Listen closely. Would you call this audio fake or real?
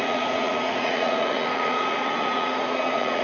fake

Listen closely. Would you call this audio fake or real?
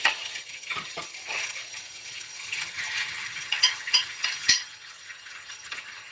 fake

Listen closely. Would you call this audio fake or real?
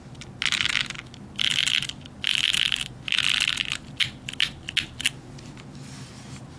real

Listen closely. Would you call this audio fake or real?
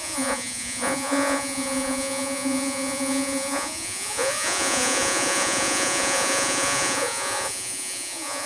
fake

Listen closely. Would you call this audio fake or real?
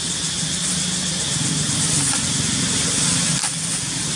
real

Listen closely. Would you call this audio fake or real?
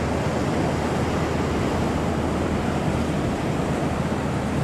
real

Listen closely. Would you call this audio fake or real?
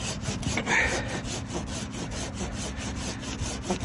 real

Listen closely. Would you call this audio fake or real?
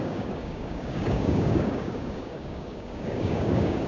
fake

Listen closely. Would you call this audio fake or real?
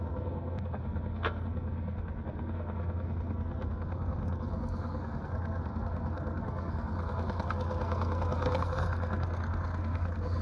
fake